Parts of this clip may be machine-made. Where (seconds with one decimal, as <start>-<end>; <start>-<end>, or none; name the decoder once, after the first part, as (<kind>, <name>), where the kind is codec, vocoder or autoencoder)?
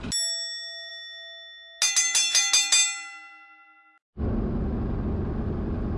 none